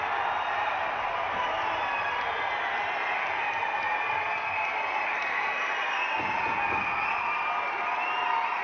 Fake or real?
real